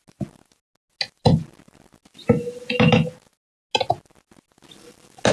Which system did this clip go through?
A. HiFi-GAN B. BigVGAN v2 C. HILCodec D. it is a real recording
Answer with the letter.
D